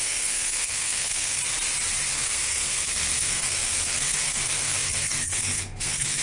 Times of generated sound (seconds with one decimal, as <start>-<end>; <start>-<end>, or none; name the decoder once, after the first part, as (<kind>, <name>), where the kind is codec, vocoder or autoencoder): 0.0-1.4 (codec, SNAC); 2.1-6.2